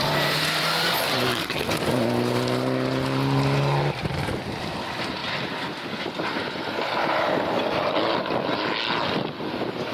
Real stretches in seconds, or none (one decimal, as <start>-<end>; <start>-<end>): 0.0-9.9